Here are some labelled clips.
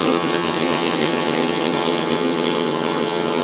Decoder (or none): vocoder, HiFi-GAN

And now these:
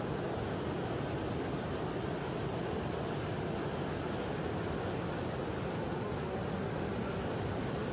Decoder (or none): none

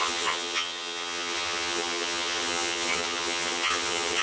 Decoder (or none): vocoder, HiFi-GAN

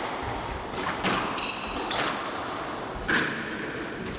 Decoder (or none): none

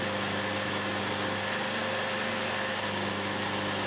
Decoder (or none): none